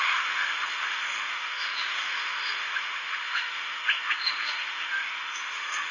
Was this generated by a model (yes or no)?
yes